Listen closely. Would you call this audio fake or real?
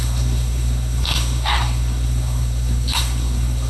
fake